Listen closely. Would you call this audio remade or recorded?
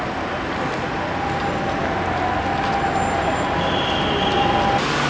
recorded